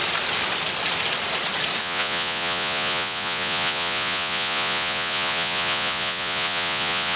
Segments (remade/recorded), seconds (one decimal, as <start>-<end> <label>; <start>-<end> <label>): 0.0-1.8 recorded; 1.8-7.2 remade